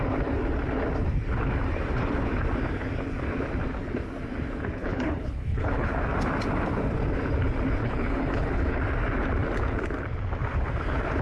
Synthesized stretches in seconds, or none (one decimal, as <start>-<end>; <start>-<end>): 4.8-5.9; 7.8-8.8